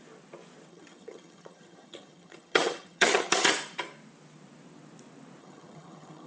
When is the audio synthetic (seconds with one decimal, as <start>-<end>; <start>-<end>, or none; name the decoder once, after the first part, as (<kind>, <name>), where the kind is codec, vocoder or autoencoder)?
0.7-3.5 (vocoder, HiFi-GAN); 5.4-6.3